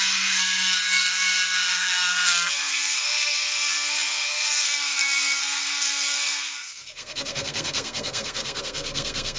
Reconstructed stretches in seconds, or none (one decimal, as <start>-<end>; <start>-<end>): 0.0-9.4